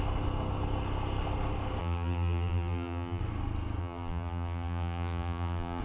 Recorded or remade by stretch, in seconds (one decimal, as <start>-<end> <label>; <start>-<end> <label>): 0.0-1.8 recorded; 1.8-3.2 remade; 3.2-3.8 recorded; 3.8-5.8 remade